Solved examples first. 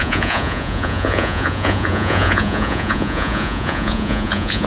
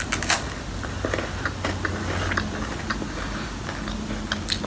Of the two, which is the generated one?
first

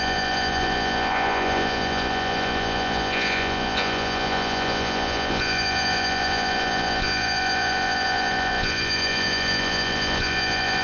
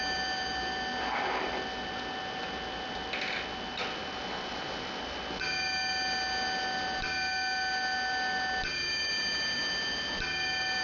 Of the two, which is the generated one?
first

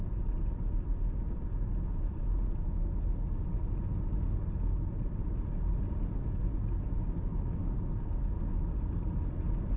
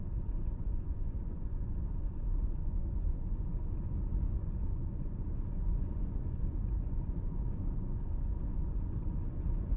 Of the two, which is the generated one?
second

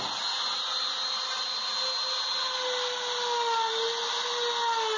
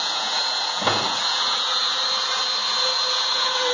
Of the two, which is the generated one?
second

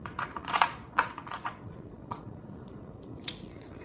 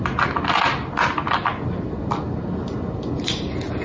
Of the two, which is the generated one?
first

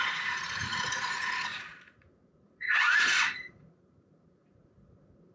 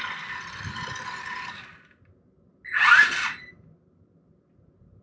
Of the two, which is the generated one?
first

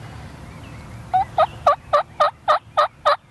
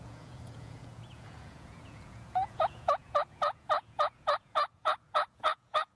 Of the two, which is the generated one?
second